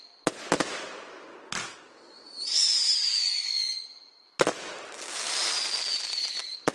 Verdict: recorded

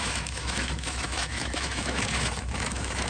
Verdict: remade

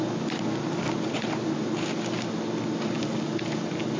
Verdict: recorded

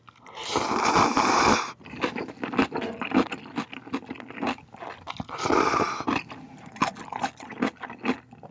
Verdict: recorded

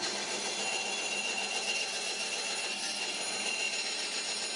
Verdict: recorded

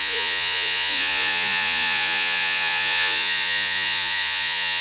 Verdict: remade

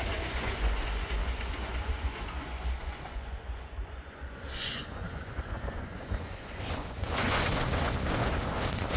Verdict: remade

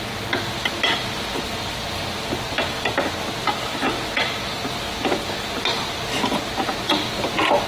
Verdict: recorded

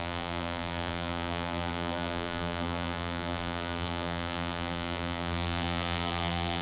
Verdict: remade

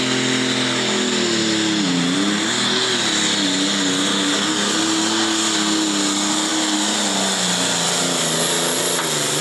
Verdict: recorded